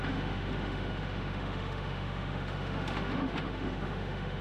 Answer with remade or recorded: remade